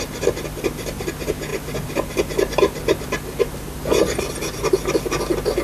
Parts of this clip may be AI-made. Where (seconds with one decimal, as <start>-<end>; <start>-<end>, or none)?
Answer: none